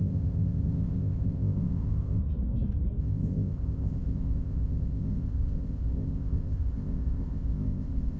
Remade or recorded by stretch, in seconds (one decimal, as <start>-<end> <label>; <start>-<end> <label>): 0.0-2.2 remade; 2.2-3.0 recorded; 3.0-8.2 remade